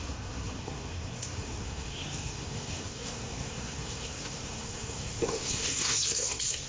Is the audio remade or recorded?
remade